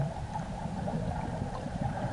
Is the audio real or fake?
fake